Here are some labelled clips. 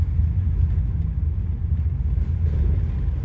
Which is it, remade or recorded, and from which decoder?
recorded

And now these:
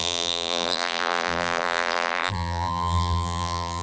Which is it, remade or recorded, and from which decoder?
remade, vocoder, BigVGAN v2